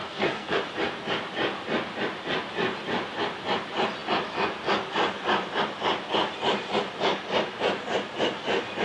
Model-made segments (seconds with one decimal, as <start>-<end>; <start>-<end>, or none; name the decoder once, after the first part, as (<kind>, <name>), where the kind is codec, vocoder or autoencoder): 0.0-0.6 (codec, SNAC)